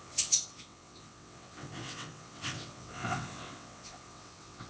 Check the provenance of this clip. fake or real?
fake